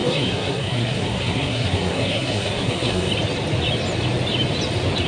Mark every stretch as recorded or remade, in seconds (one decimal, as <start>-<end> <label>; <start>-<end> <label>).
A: 0.0-3.1 remade; 3.1-5.1 recorded